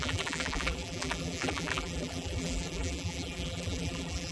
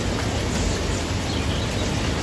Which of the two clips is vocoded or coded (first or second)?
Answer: first